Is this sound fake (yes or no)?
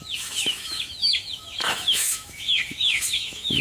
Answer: yes